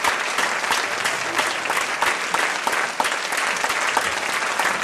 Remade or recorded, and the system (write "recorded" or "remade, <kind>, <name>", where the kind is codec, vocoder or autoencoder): recorded